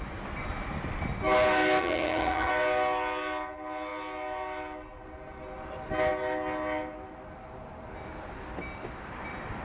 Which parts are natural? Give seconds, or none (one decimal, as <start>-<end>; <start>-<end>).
0.0-1.8; 2.5-9.6